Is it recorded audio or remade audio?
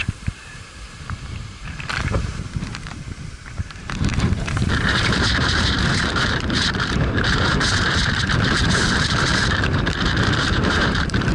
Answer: remade